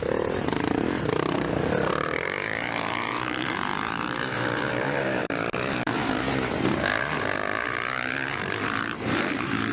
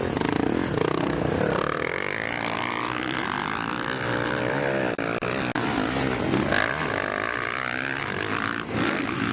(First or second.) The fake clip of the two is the first